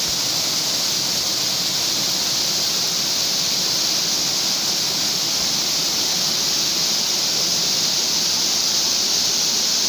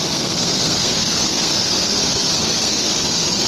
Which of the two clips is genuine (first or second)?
first